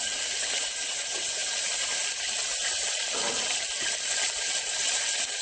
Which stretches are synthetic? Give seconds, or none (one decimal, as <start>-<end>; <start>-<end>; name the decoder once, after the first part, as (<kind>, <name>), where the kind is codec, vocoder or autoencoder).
none